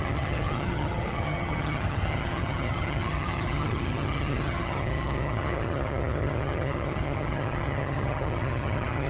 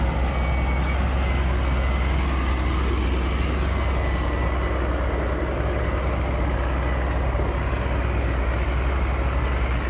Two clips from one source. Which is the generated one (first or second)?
first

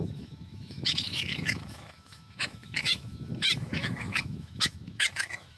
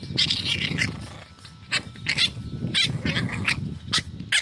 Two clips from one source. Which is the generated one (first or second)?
first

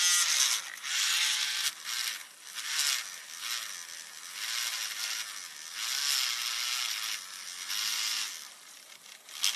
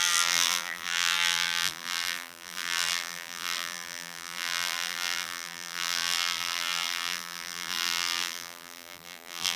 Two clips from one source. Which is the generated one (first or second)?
second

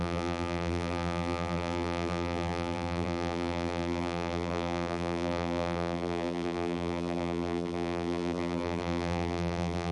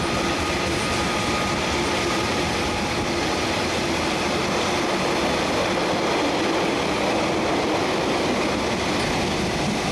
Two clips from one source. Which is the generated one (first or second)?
first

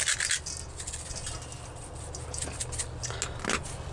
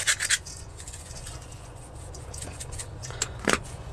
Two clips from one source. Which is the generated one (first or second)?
second